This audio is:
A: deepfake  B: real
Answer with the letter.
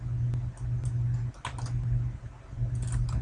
B